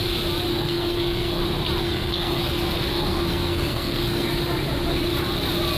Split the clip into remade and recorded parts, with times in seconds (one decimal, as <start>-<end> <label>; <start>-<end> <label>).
0.0-0.5 recorded; 0.5-1.4 remade; 1.4-1.8 recorded; 1.8-2.5 remade; 2.5-2.9 recorded; 2.9-4.3 remade; 4.3-5.8 recorded